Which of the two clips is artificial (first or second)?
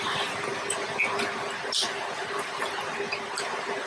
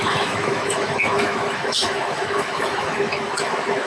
second